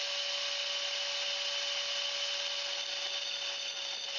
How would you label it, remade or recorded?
recorded